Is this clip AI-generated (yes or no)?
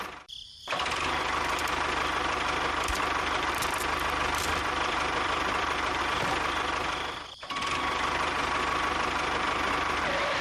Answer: yes